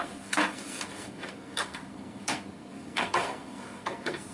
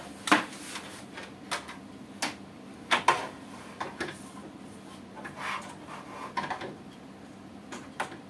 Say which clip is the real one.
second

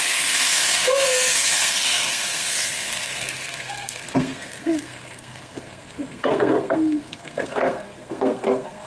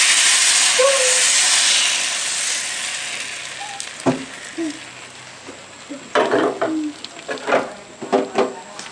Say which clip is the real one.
second